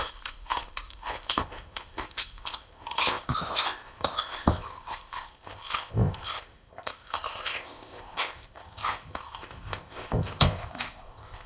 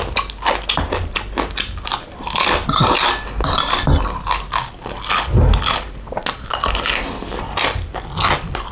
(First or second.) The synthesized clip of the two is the first